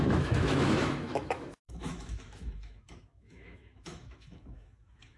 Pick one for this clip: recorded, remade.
remade